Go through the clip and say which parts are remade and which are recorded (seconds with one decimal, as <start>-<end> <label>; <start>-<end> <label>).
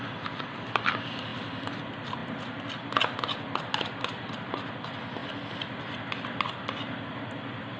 0.0-7.8 recorded